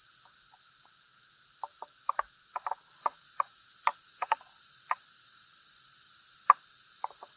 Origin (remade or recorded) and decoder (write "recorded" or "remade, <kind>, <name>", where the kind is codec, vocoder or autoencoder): recorded